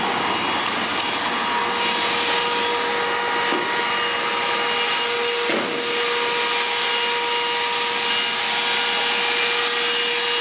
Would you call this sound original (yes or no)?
yes